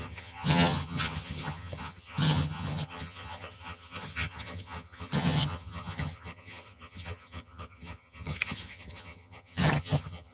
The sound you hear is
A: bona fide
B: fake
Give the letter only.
B